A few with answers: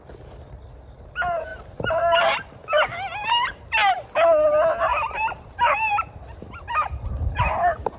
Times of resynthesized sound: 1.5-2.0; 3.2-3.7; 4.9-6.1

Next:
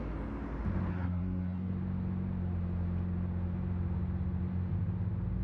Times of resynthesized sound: 0.9-1.7

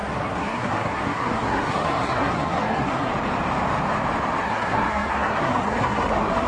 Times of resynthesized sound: 0.0-3.1; 4.4-6.5

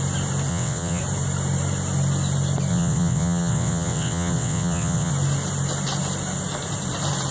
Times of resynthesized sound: 0.5-1.0; 2.7-5.1

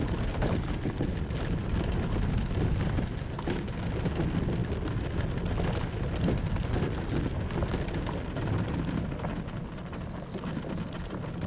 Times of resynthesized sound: none